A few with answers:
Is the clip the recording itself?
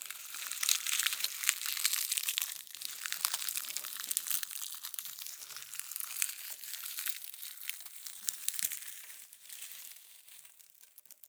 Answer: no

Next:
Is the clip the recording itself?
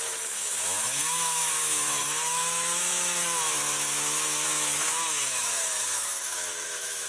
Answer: no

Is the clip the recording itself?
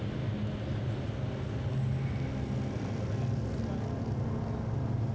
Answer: yes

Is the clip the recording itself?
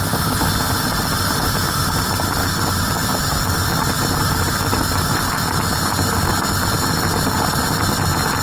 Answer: yes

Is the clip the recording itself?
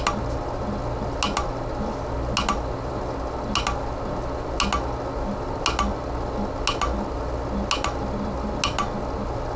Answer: yes